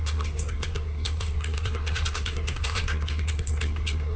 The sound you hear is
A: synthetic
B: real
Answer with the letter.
A